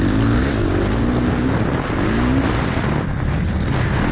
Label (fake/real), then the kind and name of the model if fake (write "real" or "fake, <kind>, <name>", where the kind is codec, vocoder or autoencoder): real